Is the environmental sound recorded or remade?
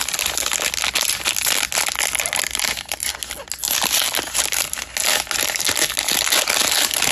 recorded